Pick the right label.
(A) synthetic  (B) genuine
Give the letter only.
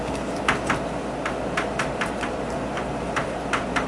B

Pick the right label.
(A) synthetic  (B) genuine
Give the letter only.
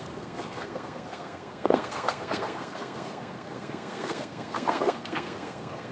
A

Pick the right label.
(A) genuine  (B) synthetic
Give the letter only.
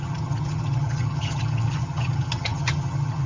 B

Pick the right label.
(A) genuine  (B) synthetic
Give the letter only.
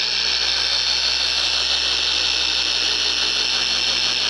A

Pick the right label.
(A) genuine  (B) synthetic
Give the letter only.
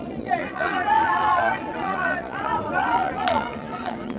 B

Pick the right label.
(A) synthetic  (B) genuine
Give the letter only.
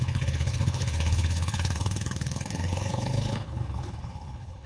A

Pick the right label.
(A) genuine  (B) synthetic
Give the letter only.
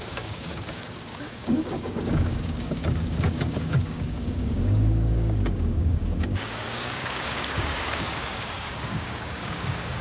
B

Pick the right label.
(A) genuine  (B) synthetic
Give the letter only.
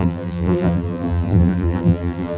B